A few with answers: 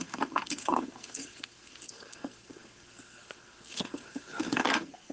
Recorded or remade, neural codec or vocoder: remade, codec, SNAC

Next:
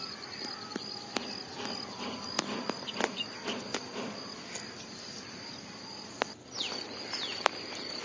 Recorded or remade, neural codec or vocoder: recorded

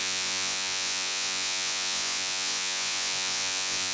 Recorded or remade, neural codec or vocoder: remade, vocoder, Vocos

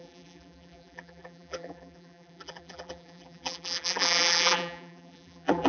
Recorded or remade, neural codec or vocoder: remade, vocoder, BigVGAN v2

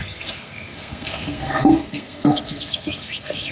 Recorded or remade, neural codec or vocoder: remade, codec, SNAC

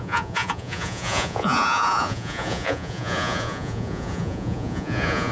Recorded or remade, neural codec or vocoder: remade, vocoder, Vocos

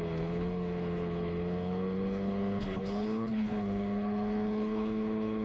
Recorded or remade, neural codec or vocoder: remade, codec, HILCodec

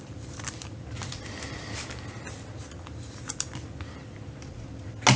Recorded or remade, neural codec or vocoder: recorded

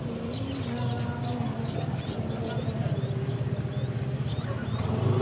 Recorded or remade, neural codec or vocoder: recorded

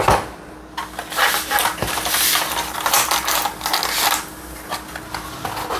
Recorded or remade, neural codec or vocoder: recorded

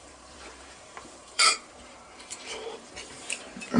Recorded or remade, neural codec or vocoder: remade, vocoder, BigVGAN v2